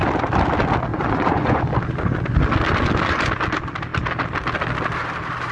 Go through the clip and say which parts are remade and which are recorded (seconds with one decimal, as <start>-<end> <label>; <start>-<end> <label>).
0.0-0.9 recorded; 0.9-1.6 remade; 1.6-5.5 recorded